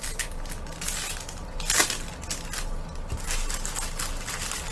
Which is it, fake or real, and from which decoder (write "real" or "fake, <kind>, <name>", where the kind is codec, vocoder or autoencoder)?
real